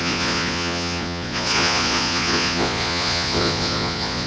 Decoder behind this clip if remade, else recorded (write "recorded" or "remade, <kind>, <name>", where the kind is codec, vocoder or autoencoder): remade, vocoder, Vocos